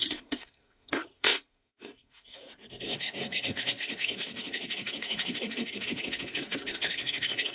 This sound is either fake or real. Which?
fake